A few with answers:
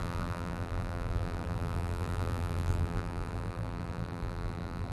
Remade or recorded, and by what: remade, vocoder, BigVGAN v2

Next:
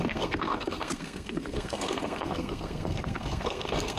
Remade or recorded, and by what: remade, codec, SNAC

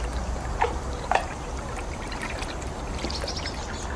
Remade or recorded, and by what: recorded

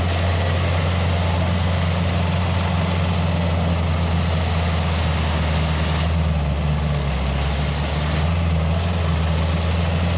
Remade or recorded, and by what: recorded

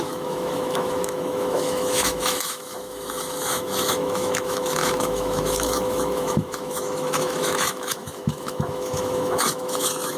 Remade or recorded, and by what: remade, autoencoder, DAC-VAE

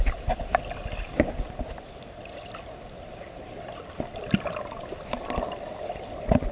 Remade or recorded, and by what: recorded